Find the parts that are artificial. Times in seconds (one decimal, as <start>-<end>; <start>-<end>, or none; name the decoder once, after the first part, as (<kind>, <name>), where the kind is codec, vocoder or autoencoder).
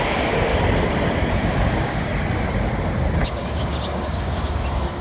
0.0-0.5 (codec, DAC); 1.3-2.1; 3.2-5.0